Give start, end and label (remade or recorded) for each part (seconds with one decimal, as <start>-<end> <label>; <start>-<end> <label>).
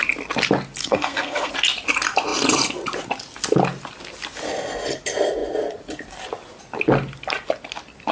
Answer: 0.0-0.8 recorded; 0.8-1.5 remade; 1.5-8.1 recorded